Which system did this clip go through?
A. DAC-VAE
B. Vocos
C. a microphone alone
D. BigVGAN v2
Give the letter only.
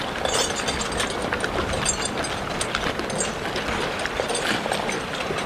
C